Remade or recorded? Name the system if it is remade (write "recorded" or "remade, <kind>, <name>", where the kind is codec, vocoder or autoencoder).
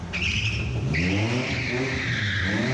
recorded